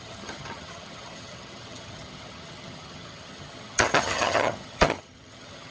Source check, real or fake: fake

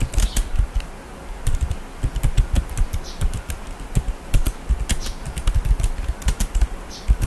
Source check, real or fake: real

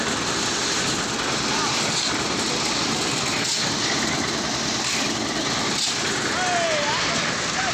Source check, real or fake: real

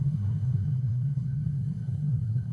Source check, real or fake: fake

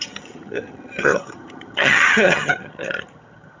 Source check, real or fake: fake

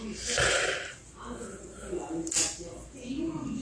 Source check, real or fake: real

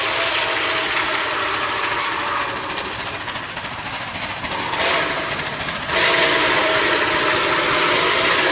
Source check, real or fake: real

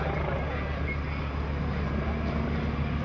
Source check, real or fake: real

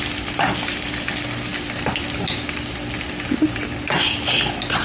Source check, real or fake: real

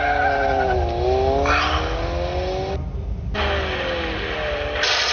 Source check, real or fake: real